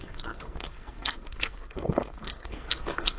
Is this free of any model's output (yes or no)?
no